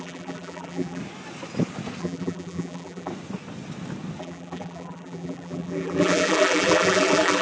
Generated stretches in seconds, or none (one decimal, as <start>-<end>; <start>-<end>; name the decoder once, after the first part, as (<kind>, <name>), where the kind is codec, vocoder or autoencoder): 0.0-1.0 (vocoder, BigVGAN v2); 2.0-3.1; 4.2-7.4